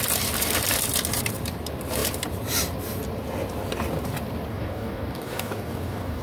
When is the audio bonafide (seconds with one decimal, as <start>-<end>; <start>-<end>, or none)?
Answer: 0.0-4.5